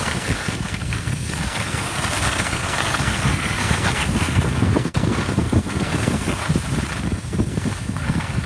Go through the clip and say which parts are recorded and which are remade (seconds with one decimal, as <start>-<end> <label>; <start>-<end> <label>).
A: 0.0-6.4 remade; 6.4-7.0 recorded; 7.0-8.5 remade